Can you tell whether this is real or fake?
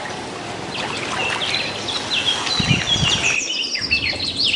real